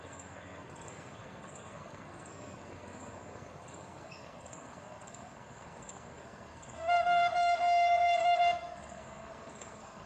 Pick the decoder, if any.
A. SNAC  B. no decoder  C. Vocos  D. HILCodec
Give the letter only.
A